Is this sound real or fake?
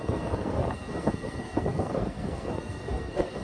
fake